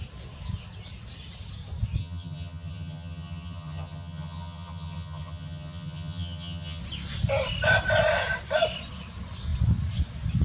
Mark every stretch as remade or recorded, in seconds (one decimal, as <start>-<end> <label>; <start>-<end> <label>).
0.0-2.0 recorded; 2.0-6.8 remade; 6.8-10.4 recorded